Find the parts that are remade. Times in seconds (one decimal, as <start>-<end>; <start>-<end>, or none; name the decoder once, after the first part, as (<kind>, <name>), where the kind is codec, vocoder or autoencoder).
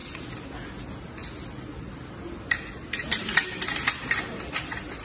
none